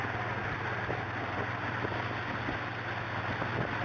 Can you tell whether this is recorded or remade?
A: recorded